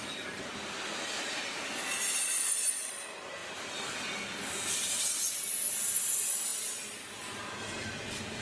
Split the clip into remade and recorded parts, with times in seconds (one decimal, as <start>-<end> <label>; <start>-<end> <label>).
0.0-6.5 remade; 6.5-8.4 recorded